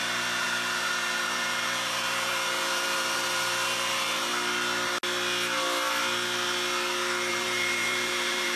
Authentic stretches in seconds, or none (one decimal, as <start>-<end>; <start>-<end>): 4.3-7.3

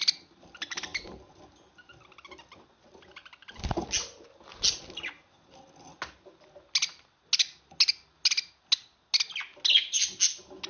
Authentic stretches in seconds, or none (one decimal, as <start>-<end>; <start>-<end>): 0.0-10.7

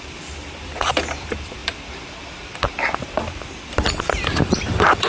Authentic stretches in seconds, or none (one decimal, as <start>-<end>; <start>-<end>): 1.6-3.2

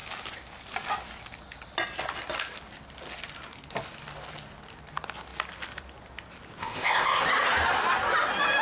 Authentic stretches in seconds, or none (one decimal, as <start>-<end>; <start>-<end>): 0.0-6.6; 7.2-8.6

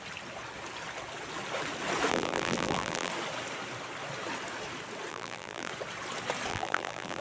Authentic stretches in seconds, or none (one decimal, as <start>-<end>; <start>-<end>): 0.0-2.1; 3.1-5.1; 5.7-6.5

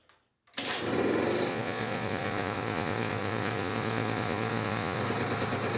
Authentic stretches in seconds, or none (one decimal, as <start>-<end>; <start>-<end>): 0.0-1.5; 5.0-5.8